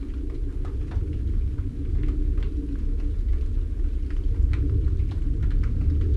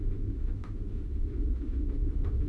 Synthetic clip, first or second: second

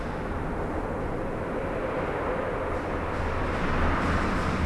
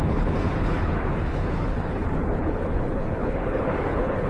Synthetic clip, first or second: second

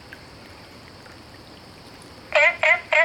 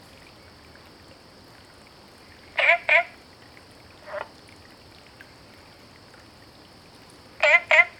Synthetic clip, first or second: first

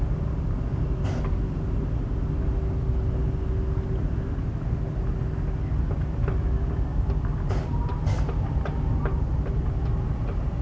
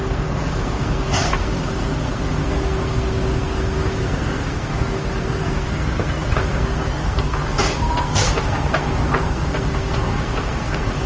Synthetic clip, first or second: second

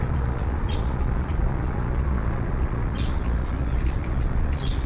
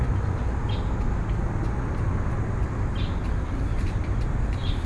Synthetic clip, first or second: first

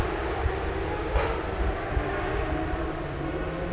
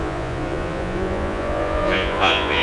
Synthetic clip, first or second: second